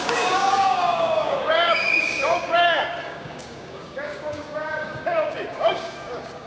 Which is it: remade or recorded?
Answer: remade